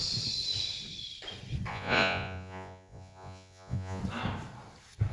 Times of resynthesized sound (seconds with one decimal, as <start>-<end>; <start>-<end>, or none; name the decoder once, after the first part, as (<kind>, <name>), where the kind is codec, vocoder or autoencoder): 1.7-4.0 (vocoder, Vocos)